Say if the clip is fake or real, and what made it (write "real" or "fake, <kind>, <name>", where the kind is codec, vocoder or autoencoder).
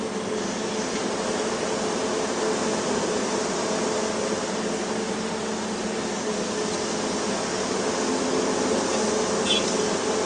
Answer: real